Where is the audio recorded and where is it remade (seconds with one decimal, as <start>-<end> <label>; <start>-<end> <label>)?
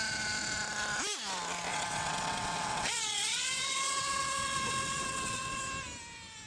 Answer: 0.0-1.7 recorded; 1.7-5.6 remade; 5.6-6.5 recorded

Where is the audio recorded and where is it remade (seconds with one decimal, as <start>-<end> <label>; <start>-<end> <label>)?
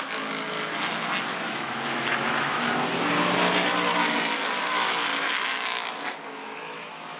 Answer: 0.0-1.3 recorded; 1.3-2.7 remade; 2.7-5.1 recorded; 5.1-5.9 remade; 5.9-6.4 recorded; 6.4-7.2 remade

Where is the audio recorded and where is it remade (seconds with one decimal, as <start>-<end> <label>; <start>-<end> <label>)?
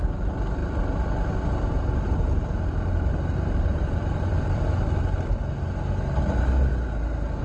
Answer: 0.0-3.7 recorded; 3.7-5.0 remade; 5.0-7.4 recorded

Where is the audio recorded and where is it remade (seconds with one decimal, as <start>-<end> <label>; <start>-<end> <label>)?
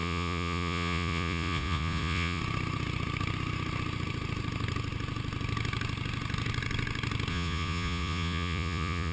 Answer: 0.0-2.4 remade; 2.4-7.3 recorded; 7.3-9.1 remade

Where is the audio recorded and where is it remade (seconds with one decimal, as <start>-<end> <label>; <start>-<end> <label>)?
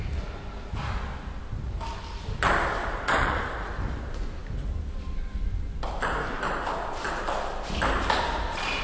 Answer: 0.0-2.8 recorded; 2.8-3.4 remade; 3.4-8.8 recorded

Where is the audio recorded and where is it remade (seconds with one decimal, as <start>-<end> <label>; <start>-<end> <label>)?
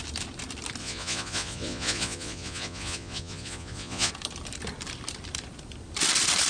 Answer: 0.0-0.8 recorded; 0.8-4.1 remade; 4.1-6.5 recorded